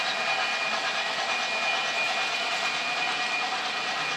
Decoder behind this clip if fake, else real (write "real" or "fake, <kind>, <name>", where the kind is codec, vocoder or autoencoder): real